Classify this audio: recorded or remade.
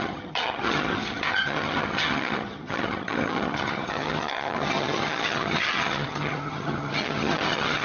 remade